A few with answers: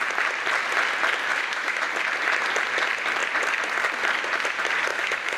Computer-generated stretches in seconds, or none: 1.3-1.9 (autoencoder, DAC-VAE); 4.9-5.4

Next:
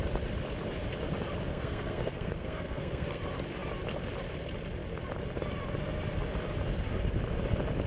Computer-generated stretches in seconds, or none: 1.5-3.2 (codec, SNAC)

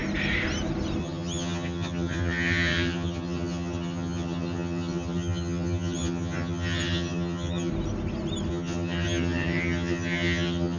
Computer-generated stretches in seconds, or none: 1.0-7.7 (vocoder, HiFi-GAN); 8.5-10.8